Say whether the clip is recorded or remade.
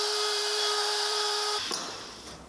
remade